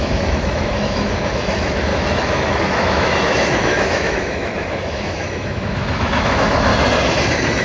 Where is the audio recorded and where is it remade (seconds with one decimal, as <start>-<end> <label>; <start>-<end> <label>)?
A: 0.0-6.7 remade; 6.7-7.6 recorded

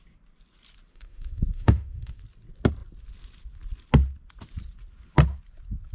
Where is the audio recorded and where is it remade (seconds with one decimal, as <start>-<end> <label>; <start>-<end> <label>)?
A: 0.0-0.9 recorded; 0.9-2.2 remade; 2.2-5.9 recorded

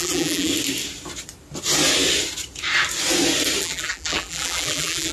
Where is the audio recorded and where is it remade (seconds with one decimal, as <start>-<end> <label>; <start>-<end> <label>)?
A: 0.0-0.5 remade; 0.5-3.6 recorded; 3.6-5.1 remade

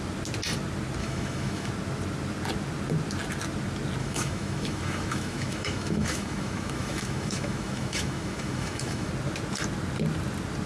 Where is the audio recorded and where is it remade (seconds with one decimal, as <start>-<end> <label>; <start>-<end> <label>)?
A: 0.0-1.0 recorded; 1.0-1.7 remade; 1.7-4.0 recorded; 4.0-9.1 remade; 9.1-10.7 recorded